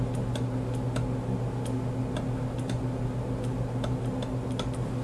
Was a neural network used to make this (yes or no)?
no